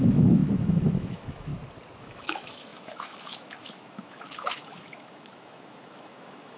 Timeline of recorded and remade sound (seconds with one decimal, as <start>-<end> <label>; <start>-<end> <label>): 0.0-1.5 remade; 1.5-2.0 recorded; 2.0-6.6 remade